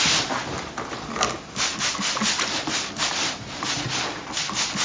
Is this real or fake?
real